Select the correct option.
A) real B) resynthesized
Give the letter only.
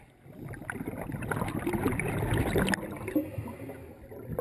A